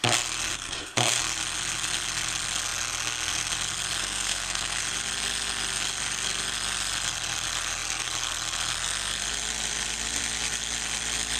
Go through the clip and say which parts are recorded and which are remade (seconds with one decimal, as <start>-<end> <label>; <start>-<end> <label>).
0.0-0.5 recorded; 0.5-1.2 remade; 1.2-4.0 recorded; 4.0-4.8 remade; 4.8-11.4 recorded